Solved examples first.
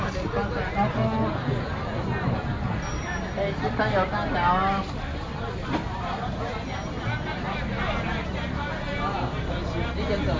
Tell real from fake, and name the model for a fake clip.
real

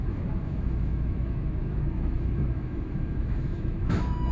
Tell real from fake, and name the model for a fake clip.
fake, autoencoder, DAC-VAE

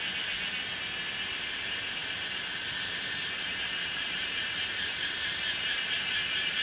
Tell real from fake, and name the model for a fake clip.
real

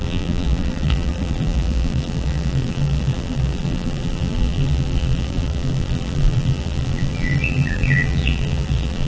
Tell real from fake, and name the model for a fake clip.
fake, vocoder, BigVGAN v2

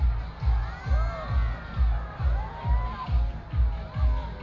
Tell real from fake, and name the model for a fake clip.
real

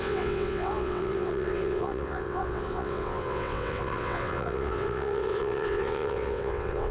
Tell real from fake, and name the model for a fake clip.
fake, vocoder, WaveNeXt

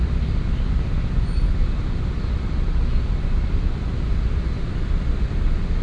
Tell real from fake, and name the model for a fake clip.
real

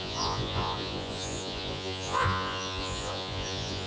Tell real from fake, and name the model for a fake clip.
fake, vocoder, Vocos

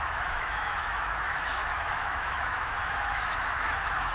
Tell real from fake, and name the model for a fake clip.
fake, autoencoder, DAC-VAE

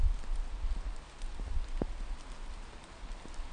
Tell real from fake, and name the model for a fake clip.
real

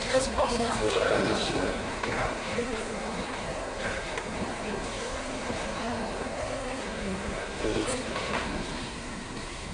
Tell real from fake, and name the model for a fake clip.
fake, codec, SNAC